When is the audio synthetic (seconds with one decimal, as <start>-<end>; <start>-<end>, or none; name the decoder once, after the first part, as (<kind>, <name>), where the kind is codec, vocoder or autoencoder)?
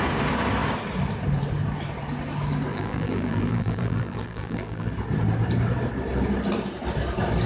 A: 2.7-4.9 (vocoder, BigVGAN v2)